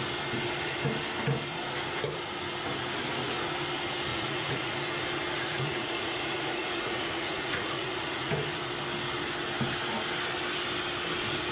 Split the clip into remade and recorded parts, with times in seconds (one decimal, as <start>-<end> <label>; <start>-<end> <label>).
0.0-4.1 recorded; 4.1-4.7 remade; 4.7-5.4 recorded; 5.4-8.3 remade; 8.3-11.5 recorded